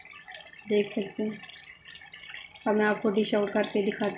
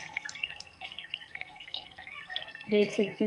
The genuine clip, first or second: first